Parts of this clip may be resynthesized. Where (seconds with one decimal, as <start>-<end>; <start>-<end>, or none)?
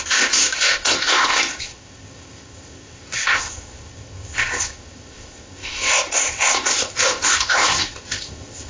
0.0-8.7